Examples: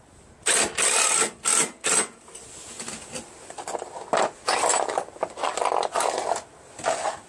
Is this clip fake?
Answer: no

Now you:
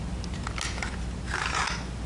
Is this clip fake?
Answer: no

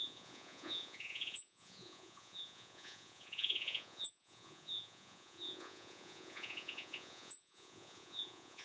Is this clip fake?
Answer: yes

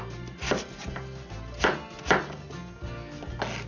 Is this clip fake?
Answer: no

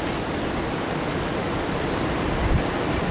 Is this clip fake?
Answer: no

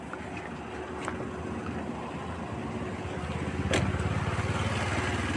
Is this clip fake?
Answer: no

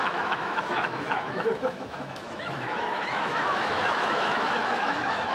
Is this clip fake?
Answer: yes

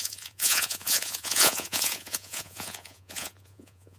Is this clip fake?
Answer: yes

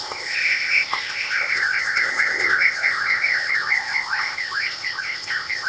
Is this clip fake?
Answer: yes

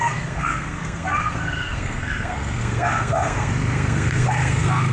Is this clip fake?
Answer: yes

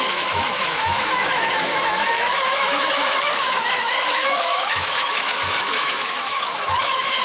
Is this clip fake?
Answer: yes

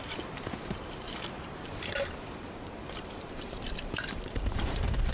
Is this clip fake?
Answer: yes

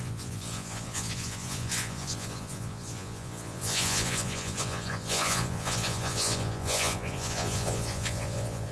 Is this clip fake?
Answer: yes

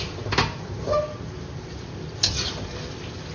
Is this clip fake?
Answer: no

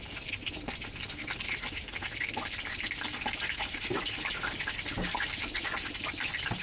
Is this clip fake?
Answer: no